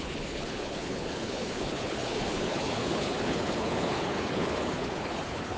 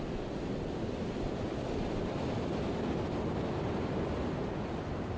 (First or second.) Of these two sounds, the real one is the second